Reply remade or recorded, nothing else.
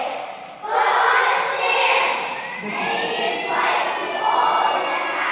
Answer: recorded